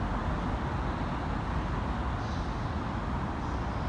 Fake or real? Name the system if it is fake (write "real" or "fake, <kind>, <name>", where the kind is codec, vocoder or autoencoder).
real